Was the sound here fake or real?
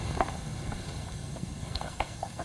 fake